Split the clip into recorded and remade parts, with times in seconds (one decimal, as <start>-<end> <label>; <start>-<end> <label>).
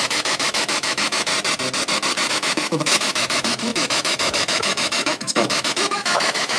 0.0-1.3 remade; 1.3-2.3 recorded; 2.3-6.6 remade